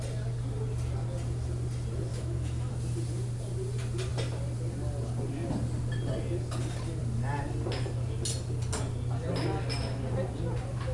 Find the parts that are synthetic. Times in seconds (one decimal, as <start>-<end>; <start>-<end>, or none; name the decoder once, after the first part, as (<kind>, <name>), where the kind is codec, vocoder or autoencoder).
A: 2.1-2.7 (autoencoder, DAC-VAE)